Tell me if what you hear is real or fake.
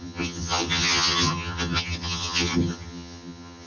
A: fake